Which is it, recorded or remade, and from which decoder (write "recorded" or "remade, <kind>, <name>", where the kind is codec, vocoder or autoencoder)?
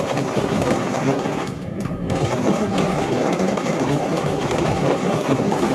remade, codec, SNAC